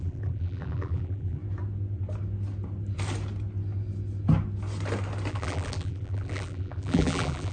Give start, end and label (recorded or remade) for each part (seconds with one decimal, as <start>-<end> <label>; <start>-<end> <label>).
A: 0.0-1.4 remade; 1.4-5.3 recorded; 5.3-7.5 remade